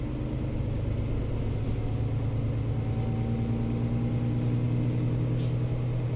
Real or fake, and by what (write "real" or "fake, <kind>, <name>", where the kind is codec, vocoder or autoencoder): real